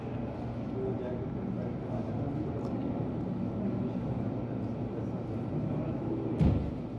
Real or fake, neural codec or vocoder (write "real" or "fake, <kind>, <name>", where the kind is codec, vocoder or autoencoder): real